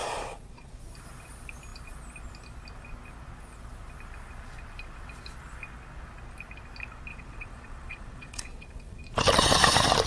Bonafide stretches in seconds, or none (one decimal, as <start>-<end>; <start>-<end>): 0.8-7.1; 9.0-10.1